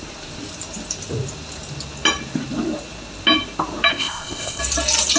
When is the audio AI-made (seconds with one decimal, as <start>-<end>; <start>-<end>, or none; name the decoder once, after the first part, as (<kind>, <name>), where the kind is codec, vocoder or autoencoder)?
3.9-4.6 (codec, ZipCodec)